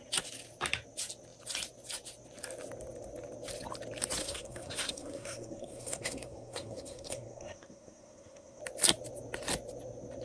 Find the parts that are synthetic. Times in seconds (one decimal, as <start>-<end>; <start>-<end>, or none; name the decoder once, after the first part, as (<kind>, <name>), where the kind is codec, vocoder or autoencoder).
4.2-8.6 (codec, SNAC)